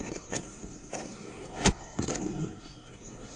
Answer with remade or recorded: remade